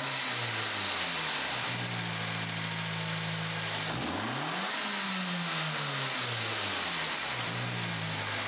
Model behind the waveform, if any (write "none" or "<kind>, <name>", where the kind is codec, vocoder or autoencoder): none